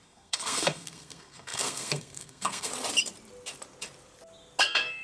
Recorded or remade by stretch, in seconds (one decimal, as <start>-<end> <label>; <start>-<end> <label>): 0.0-2.7 remade; 2.7-4.6 recorded; 4.6-5.0 remade